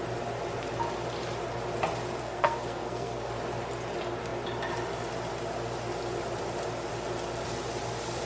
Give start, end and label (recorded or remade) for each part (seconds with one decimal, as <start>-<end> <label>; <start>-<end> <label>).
0.0-2.2 recorded; 2.2-3.3 remade; 3.3-8.3 recorded